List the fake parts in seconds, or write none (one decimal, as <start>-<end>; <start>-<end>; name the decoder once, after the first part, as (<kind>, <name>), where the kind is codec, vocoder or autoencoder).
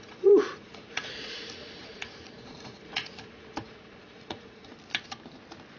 0.0-4.7 (vocoder, Vocos)